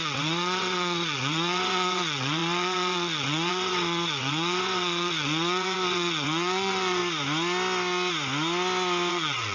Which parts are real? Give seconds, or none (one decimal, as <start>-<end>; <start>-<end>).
7.0-9.1